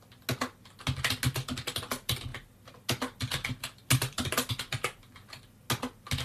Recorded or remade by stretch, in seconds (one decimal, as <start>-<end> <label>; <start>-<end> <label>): 0.0-6.2 recorded